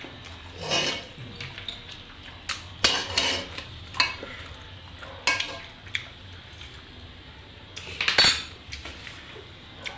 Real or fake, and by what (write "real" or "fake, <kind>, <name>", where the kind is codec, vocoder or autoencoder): real